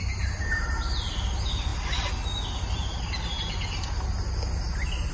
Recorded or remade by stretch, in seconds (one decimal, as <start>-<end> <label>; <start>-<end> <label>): 0.0-5.1 recorded